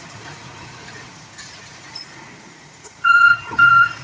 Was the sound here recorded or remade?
remade